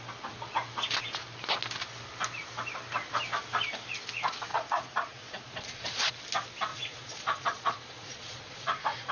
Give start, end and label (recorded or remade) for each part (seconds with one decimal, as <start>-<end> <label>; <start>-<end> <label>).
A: 0.0-4.5 recorded; 4.5-6.1 remade; 6.1-6.7 recorded; 6.7-9.1 remade